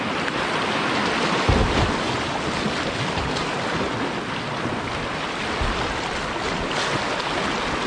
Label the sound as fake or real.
real